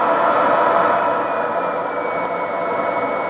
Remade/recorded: recorded